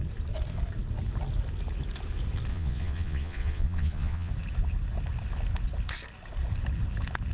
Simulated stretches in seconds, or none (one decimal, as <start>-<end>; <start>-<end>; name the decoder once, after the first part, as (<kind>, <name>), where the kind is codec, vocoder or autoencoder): 2.5-4.3 (vocoder, Vocos)